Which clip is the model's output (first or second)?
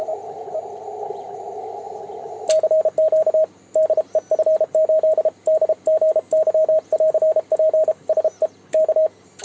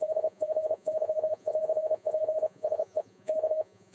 second